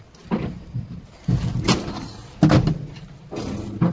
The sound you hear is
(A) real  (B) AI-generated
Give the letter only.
A